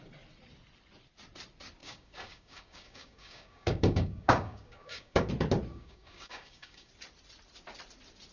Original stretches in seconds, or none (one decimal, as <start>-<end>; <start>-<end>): 0.0-1.8; 5.3-5.7; 6.9-8.3